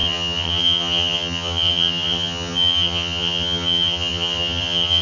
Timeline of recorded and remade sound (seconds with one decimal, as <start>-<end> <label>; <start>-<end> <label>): 0.0-5.0 remade